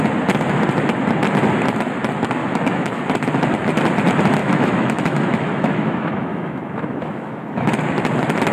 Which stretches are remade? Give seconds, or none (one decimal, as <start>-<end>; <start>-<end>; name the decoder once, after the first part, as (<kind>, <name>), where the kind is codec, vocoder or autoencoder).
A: 2.4-3.0 (autoencoder, DAC-VAE); 4.4-7.7